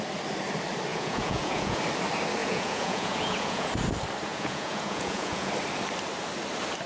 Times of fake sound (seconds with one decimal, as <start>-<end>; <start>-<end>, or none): 0.9-1.8; 2.4-3.7; 4.3-5.5